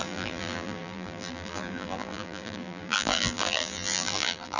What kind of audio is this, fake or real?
fake